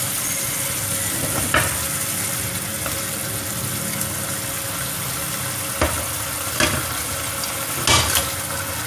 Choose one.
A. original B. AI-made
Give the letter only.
A